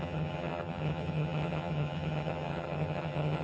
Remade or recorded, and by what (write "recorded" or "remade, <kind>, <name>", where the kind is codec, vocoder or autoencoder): remade, vocoder, HiFi-GAN